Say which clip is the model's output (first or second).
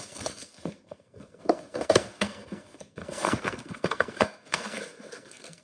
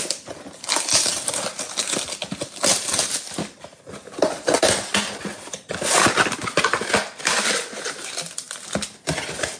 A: first